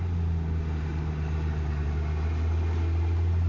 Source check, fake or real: real